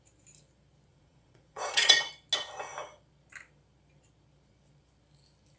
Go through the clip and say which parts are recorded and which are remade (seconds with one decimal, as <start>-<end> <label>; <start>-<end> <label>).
0.0-0.9 recorded; 0.9-2.1 remade; 2.1-5.6 recorded